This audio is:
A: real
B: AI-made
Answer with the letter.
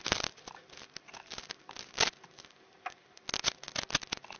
A